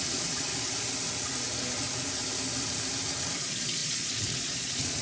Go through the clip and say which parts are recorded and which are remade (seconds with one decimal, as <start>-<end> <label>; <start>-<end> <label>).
0.0-0.5 remade; 0.5-3.4 recorded; 3.4-5.0 remade